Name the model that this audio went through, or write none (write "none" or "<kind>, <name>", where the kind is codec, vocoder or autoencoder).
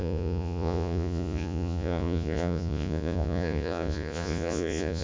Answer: vocoder, Vocos